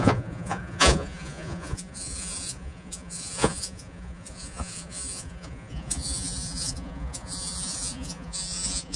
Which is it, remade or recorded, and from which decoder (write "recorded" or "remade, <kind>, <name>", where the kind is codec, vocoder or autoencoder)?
remade, vocoder, Vocos